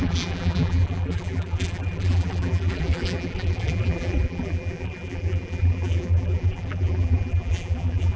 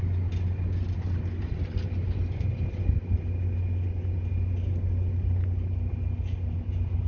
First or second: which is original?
second